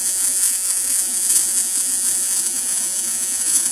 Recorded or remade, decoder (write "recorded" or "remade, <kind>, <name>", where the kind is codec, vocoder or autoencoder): remade, vocoder, Vocos